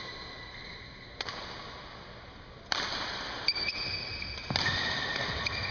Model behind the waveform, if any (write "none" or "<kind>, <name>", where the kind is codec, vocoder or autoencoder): none